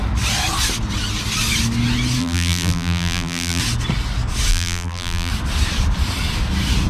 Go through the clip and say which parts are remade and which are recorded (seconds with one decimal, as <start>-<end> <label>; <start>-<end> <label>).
0.0-2.2 recorded; 2.2-3.6 remade; 3.6-4.5 recorded; 4.5-5.3 remade; 5.3-6.9 recorded